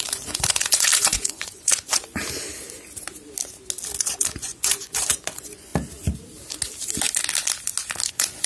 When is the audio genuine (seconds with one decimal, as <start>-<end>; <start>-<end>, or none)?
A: 2.2-4.0; 5.7-8.1